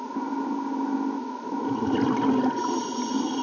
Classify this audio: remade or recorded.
recorded